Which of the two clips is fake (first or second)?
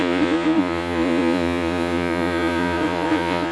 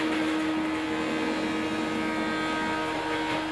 first